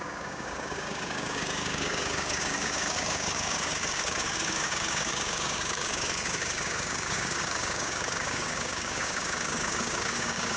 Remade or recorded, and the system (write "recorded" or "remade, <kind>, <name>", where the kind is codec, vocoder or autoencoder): remade, codec, DAC